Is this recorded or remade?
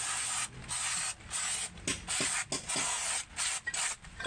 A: recorded